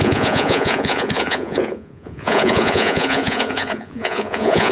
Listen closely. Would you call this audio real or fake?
fake